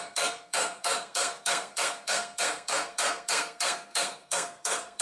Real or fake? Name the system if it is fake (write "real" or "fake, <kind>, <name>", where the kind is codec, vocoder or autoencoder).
fake, codec, SNAC